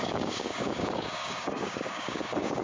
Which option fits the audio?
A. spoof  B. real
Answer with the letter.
A